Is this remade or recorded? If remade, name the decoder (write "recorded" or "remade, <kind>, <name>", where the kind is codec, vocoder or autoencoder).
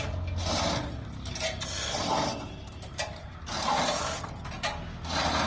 recorded